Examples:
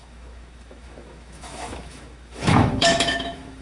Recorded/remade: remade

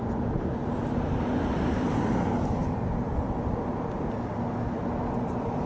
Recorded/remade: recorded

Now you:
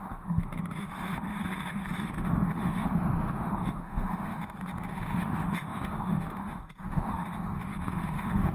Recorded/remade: remade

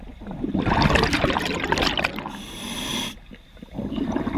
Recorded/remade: recorded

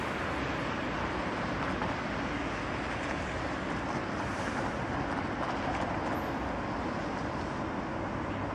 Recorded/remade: recorded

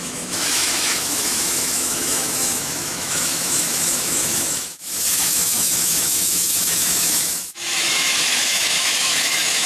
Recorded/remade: remade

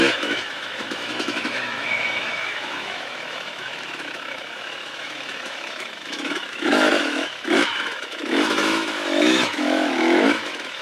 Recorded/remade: remade